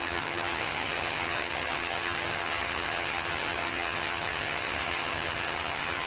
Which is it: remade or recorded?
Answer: remade